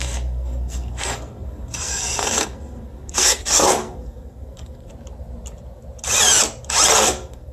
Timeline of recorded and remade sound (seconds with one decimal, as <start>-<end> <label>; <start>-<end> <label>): 0.0-4.9 remade; 4.9-7.0 recorded; 7.0-7.5 remade